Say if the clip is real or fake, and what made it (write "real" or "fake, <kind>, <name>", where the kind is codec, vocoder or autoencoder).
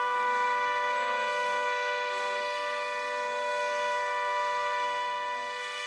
fake, codec, SNAC